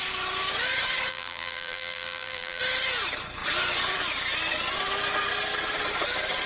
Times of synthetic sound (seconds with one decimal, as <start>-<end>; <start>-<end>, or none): 1.1-2.6